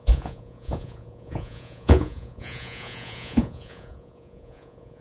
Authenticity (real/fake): fake